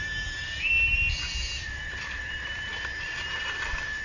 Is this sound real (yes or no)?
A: yes